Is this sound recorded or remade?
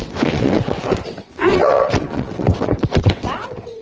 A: remade